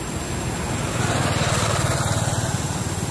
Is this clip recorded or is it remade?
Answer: recorded